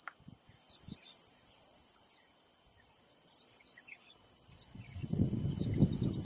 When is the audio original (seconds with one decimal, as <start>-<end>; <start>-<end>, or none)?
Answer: 0.0-1.1; 1.9-2.7; 5.4-6.2